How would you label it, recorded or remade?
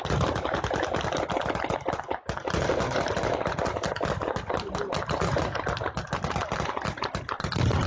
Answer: recorded